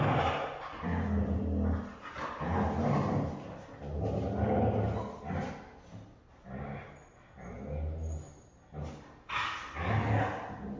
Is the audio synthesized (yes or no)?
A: no